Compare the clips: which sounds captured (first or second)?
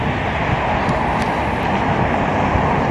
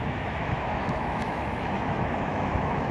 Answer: first